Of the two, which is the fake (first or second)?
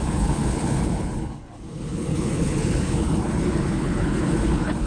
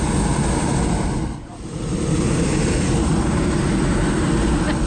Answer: first